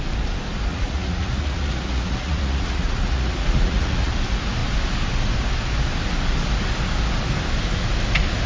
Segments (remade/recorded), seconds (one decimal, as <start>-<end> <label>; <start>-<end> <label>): 0.0-0.7 recorded; 0.7-4.1 remade; 4.1-8.5 recorded